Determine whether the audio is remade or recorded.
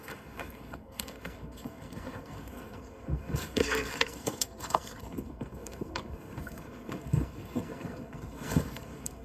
remade